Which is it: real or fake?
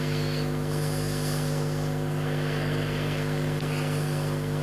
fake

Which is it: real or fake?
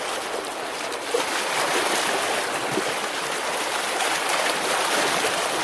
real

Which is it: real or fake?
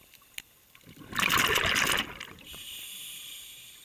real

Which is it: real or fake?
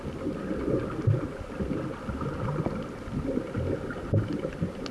real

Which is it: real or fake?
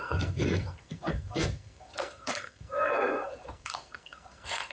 fake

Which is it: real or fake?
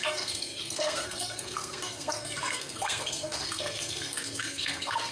fake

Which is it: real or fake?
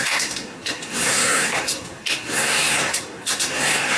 fake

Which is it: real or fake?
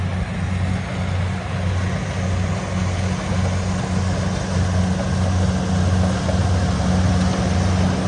real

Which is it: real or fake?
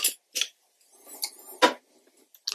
real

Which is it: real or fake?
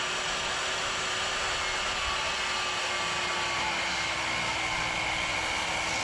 real